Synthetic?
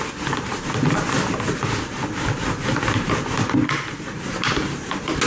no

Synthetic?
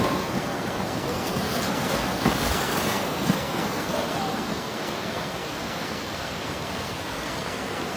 yes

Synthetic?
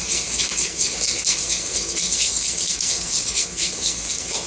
yes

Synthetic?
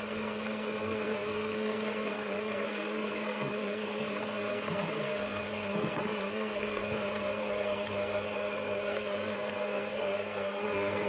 yes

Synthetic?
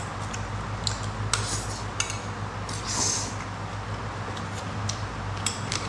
no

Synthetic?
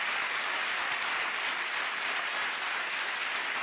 no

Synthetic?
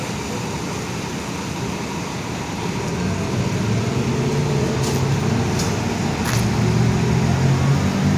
no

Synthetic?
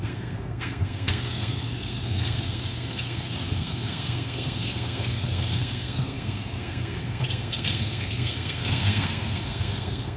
yes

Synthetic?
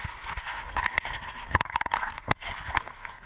yes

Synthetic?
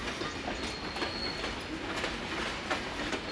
no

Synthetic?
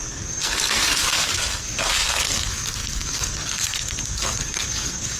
yes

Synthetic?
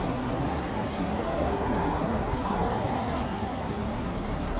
yes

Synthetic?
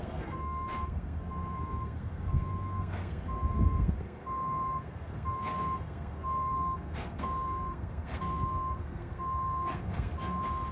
yes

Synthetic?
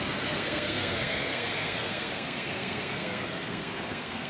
yes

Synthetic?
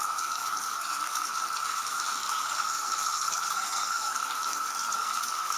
yes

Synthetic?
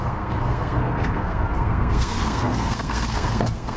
yes